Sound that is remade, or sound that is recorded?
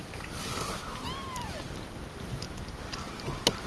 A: recorded